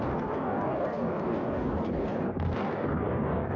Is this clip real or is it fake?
fake